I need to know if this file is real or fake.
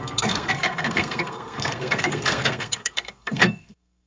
fake